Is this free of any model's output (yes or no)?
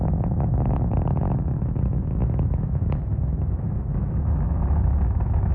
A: no